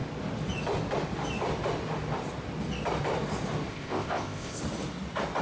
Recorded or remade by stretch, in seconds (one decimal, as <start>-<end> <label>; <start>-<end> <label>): 0.0-3.7 recorded; 3.7-4.6 remade; 4.6-5.4 recorded